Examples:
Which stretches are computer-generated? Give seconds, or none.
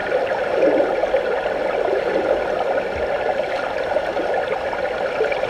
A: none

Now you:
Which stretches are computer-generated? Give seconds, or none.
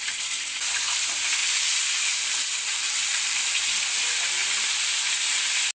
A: 1.4-3.8 (vocoder, BigVGAN v2)